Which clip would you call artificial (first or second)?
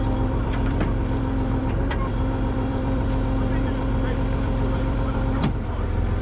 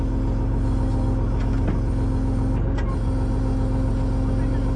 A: first